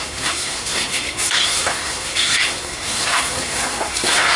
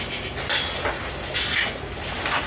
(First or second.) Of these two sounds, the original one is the second